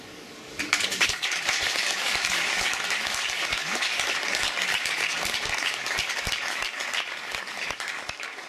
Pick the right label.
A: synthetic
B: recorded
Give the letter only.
A